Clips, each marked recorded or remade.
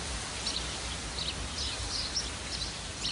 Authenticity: recorded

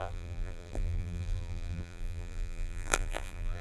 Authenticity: remade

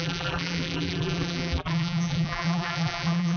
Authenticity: remade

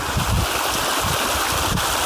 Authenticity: recorded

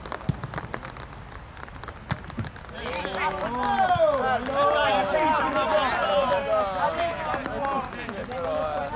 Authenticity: recorded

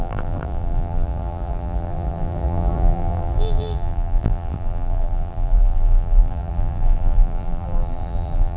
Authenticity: remade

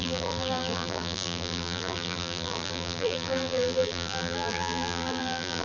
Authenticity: remade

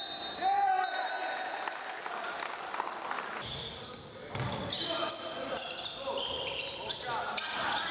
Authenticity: recorded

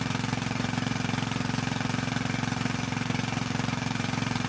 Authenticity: remade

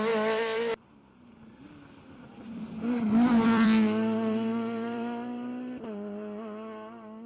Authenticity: remade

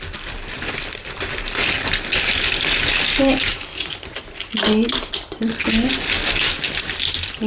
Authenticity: recorded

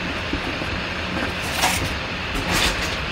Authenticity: recorded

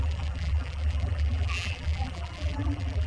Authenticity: remade